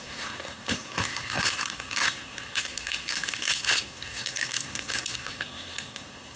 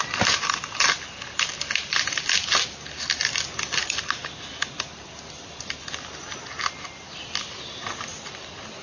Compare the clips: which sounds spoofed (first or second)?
first